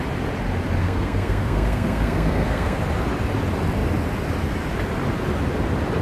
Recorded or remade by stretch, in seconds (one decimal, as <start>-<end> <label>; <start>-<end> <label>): 0.0-0.8 recorded; 0.8-2.8 remade; 2.8-6.0 recorded